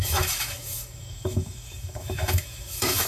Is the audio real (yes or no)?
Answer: no